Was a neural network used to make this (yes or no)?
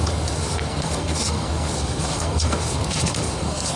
yes